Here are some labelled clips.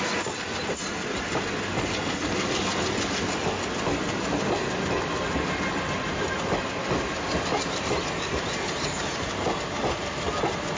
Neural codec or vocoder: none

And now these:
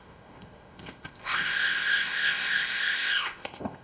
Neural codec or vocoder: codec, ZipCodec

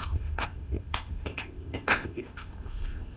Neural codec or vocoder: codec, ZipCodec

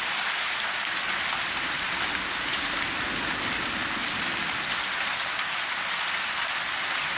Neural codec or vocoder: none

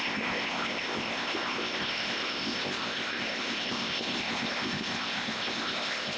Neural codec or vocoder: codec, ZipCodec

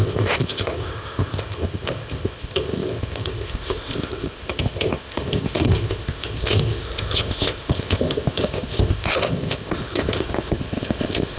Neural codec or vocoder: codec, ZipCodec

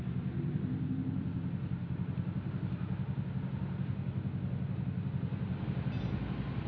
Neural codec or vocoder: none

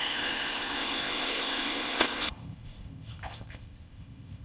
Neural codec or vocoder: codec, ZipCodec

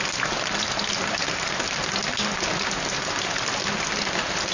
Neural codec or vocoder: none